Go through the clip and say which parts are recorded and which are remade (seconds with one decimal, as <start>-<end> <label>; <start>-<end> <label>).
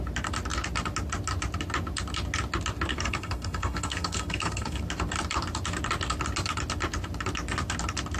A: 0.0-2.9 recorded; 2.9-4.8 remade; 4.8-8.2 recorded